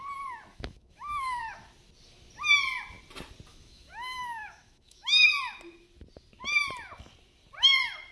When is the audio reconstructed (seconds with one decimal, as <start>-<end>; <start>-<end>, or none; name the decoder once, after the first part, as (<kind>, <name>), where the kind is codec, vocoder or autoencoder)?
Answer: 0.5-1.4 (autoencoder, DAC-VAE); 3.5-5.3